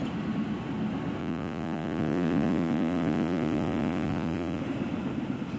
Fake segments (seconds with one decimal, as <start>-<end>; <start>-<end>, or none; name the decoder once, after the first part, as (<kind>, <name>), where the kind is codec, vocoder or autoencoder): 1.2-4.6 (vocoder, Vocos)